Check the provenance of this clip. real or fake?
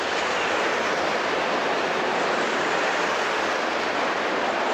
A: real